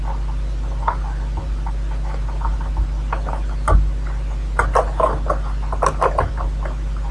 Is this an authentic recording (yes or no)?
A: yes